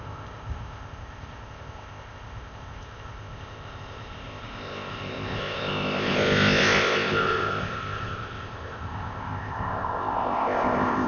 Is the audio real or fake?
fake